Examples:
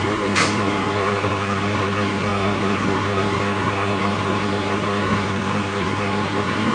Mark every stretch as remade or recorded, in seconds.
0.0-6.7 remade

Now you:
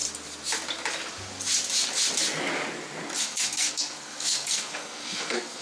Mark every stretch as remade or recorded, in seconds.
0.0-3.2 recorded; 3.2-5.6 remade

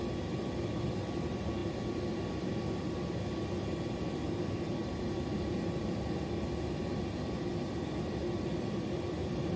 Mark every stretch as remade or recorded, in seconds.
0.0-9.6 recorded